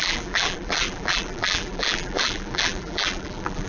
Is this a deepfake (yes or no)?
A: yes